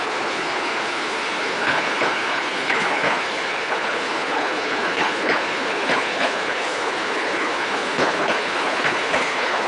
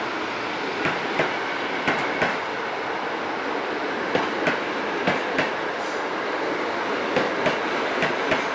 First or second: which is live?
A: second